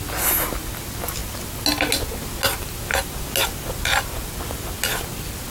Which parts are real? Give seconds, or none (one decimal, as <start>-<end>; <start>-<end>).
0.0-5.5